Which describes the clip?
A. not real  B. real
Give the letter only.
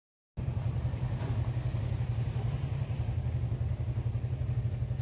B